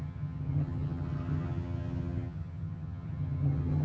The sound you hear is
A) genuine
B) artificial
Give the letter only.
B